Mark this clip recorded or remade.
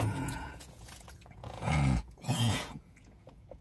remade